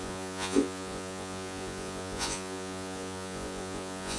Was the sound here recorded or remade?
remade